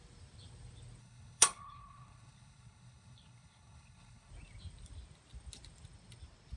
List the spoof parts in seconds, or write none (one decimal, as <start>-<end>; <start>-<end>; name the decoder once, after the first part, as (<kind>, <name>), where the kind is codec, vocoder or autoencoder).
1.0-4.3 (codec, HILCodec)